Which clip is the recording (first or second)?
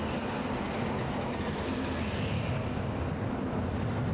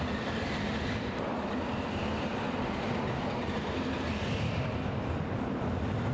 first